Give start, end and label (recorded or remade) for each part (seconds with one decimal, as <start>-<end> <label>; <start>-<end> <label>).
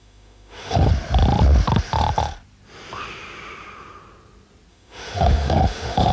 0.0-0.9 remade; 0.9-4.7 recorded; 4.7-6.1 remade